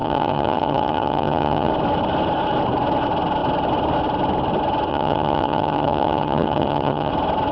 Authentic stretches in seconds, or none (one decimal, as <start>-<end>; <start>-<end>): 1.7-4.9; 7.1-7.5